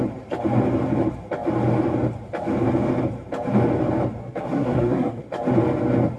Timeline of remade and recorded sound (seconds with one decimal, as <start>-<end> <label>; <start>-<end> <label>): 0.0-4.2 recorded; 4.2-5.2 remade; 5.2-6.2 recorded